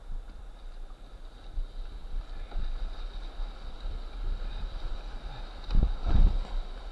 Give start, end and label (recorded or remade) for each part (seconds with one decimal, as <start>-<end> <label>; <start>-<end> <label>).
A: 0.0-6.9 recorded